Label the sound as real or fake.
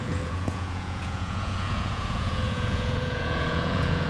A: fake